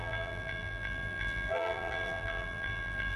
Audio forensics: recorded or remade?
remade